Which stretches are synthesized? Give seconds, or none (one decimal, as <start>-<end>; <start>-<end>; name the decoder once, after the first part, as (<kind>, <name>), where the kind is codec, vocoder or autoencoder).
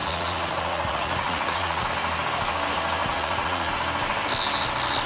0.0-1.9 (vocoder, Vocos); 3.0-3.7